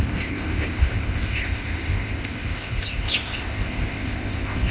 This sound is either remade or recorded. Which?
remade